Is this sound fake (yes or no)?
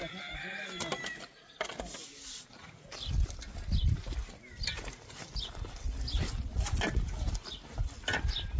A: no